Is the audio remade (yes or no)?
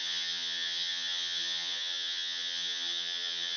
yes